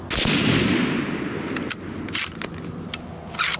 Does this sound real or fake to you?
real